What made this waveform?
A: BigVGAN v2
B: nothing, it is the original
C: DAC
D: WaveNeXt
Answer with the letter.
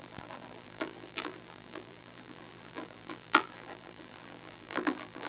A